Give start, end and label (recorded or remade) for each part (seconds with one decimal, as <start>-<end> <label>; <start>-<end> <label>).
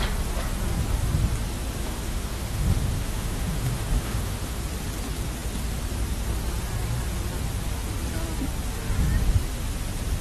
0.0-1.8 recorded; 1.8-4.6 remade; 4.6-10.2 recorded